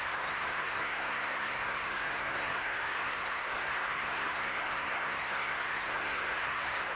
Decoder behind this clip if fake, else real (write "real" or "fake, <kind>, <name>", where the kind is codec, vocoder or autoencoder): fake, codec, SNAC